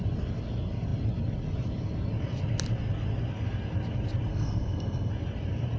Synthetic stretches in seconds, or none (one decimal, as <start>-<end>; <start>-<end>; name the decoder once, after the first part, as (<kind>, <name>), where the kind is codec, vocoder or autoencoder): 4.3-5.1 (codec, SNAC)